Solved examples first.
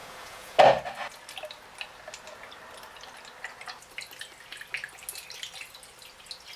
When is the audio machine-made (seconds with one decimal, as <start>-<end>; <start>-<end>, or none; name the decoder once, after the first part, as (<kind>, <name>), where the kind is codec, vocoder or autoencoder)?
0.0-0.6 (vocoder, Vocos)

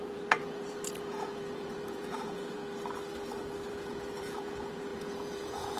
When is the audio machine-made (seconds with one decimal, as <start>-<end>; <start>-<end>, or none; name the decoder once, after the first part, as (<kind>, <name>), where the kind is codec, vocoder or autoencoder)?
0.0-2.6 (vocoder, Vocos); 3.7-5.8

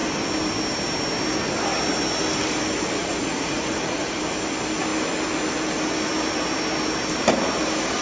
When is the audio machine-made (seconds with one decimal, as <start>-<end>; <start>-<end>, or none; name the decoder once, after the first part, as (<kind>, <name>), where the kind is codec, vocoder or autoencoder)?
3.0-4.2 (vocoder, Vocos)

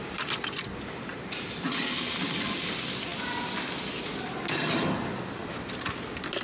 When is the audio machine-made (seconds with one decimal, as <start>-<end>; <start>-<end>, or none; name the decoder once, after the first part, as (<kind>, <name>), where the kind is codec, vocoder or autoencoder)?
none

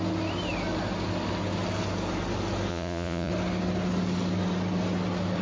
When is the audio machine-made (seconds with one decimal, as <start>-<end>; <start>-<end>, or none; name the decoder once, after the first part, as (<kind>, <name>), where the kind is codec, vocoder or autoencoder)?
2.7-3.3 (vocoder, Vocos)

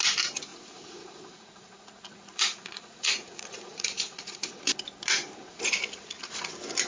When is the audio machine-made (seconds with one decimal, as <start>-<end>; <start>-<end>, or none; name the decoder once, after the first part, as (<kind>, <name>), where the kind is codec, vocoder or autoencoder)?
0.5-4.6 (vocoder, Vocos); 5.5-6.5

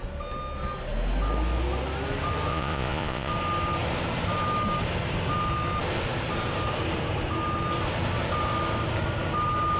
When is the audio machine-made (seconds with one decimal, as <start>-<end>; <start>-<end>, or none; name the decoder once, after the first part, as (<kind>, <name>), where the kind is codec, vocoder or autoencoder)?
2.5-3.3 (vocoder, Vocos)